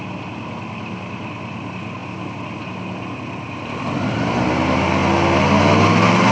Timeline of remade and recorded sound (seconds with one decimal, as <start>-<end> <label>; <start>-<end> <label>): 0.0-6.3 recorded